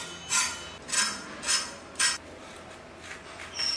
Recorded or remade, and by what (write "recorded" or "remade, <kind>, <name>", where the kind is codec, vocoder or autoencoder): recorded